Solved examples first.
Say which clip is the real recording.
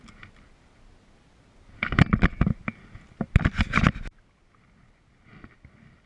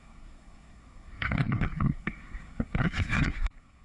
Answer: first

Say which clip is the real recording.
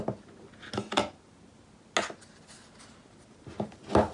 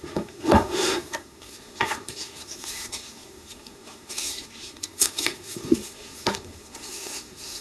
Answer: first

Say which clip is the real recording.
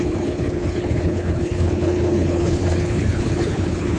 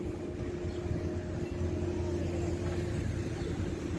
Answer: second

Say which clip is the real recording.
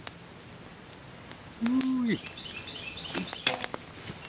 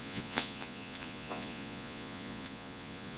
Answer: first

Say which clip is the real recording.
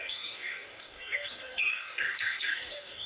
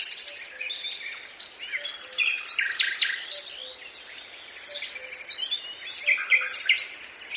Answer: second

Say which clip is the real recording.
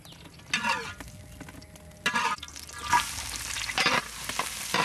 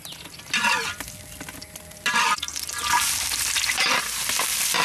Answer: first